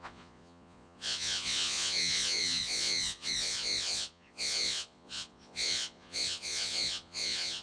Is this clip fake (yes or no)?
yes